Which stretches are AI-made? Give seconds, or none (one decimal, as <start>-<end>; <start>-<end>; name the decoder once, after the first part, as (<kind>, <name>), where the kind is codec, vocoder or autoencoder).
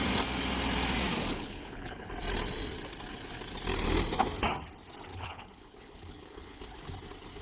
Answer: 1.3-2.1 (codec, HILCodec); 5.1-6.6